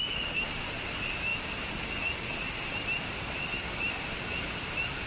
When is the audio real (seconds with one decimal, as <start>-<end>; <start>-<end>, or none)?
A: 0.0-5.1